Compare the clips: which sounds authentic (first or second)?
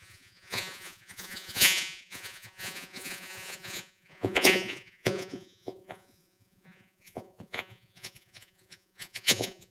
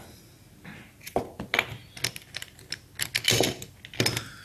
second